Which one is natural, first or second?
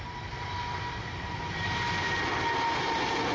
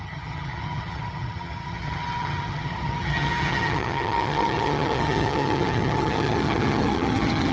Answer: first